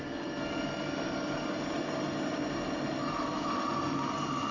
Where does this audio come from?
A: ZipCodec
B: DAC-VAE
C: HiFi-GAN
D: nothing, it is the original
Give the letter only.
D